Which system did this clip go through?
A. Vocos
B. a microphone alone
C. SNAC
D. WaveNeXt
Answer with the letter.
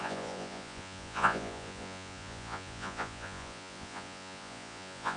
A